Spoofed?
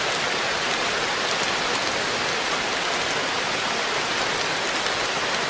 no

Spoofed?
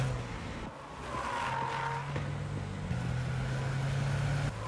no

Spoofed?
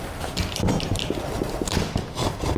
no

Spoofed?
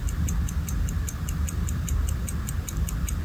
no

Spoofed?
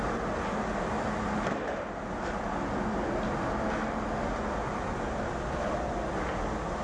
no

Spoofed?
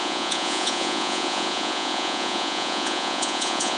yes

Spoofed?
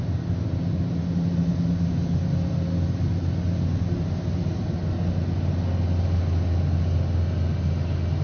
no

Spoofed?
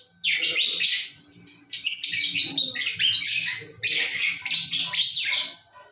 no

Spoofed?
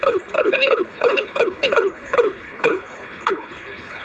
yes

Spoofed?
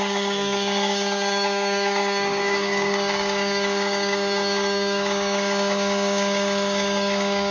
yes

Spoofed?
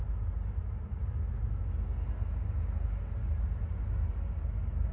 no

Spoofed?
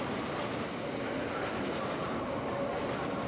no